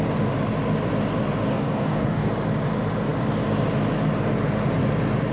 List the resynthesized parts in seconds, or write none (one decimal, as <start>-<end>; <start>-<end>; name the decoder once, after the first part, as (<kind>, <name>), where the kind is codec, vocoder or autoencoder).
1.5-2.3 (codec, DAC)